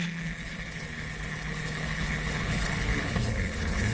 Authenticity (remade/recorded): remade